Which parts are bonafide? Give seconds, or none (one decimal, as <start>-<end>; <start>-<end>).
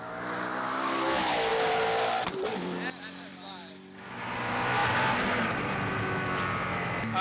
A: 0.0-7.2